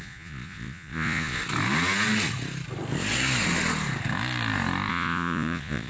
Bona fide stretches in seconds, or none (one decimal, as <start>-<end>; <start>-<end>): 1.4-4.9